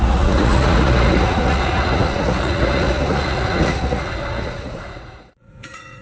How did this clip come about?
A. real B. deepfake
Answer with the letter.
B